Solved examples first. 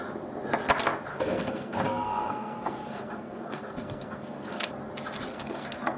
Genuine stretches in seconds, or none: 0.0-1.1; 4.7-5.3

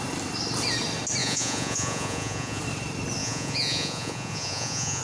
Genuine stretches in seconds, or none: 0.0-1.2; 2.6-3.2

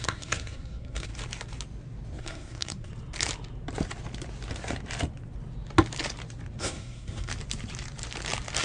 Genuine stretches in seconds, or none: 1.1-2.2; 2.9-6.6; 7.3-8.6

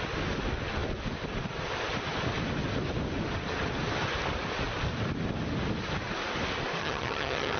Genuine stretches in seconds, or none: 0.0-6.8